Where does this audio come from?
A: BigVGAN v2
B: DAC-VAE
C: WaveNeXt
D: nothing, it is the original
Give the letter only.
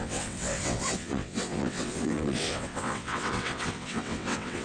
C